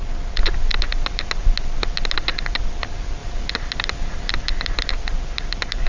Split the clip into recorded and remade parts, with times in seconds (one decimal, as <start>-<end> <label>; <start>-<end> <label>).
0.0-5.9 recorded